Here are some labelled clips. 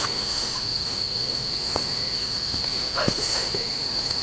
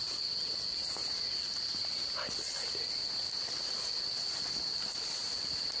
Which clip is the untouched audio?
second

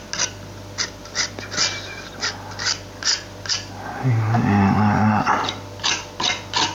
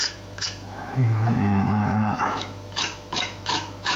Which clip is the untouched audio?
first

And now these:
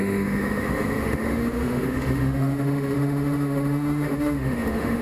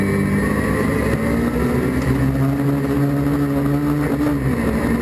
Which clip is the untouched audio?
second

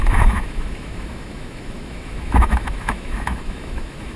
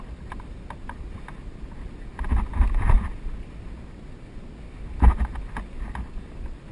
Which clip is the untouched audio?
second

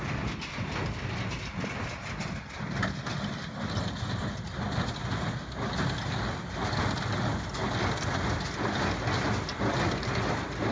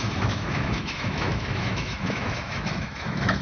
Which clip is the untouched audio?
first